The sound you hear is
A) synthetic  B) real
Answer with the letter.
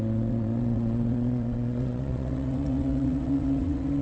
A